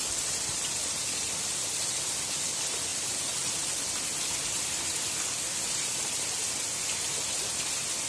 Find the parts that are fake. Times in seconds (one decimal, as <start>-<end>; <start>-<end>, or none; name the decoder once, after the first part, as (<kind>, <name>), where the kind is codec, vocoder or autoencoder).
0.5-1.4 (vocoder, BigVGAN v2)